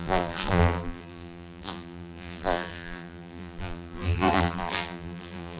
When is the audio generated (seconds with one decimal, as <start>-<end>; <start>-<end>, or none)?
0.0-5.6